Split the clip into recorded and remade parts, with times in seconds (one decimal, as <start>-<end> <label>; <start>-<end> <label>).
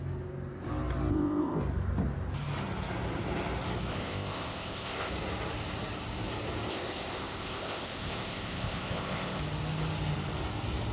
0.0-1.1 recorded; 1.1-1.6 remade; 1.6-3.9 recorded; 3.9-5.1 remade; 5.1-6.7 recorded; 6.7-9.4 remade; 9.4-10.9 recorded